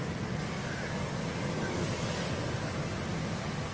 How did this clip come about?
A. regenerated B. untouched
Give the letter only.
B